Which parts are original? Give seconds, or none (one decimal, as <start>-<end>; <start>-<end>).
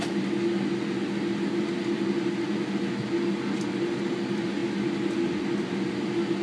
0.0-6.4